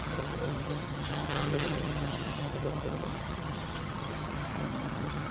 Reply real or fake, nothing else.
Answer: fake